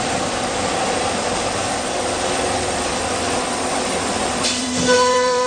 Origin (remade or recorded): remade